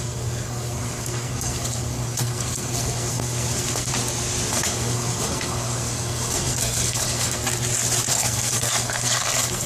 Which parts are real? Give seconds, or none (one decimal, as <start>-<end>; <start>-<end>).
3.9-4.5; 7.4-8.1